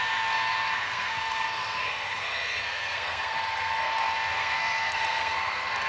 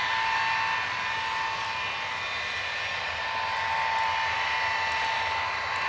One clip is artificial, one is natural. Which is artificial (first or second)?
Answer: first